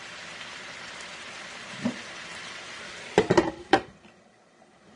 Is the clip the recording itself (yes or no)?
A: no